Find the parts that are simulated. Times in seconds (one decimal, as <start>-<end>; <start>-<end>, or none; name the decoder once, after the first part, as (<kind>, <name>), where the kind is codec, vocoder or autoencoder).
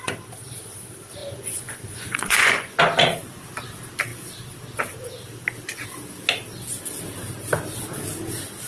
1.2-2.8 (vocoder, Vocos)